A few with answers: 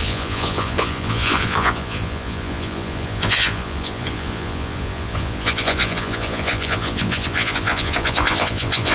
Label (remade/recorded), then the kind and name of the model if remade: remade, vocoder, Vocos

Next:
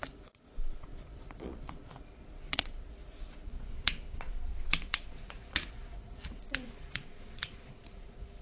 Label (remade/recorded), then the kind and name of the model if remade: remade, vocoder, Vocos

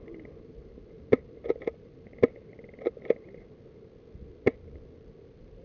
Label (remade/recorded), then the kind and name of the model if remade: recorded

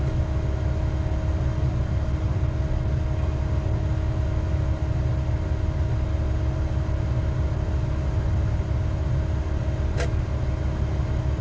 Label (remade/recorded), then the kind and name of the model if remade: recorded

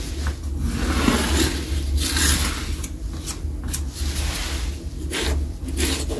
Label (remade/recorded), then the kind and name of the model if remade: recorded